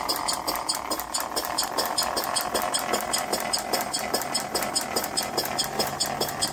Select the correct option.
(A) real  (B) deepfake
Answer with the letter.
A